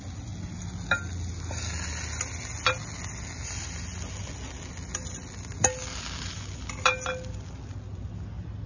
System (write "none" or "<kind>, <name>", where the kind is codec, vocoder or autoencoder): none